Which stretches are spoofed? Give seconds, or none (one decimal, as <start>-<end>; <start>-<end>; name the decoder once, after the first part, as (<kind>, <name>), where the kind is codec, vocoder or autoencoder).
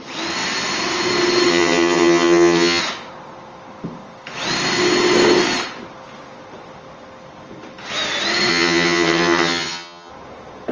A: 1.5-2.8 (vocoder, HiFi-GAN); 8.5-10.1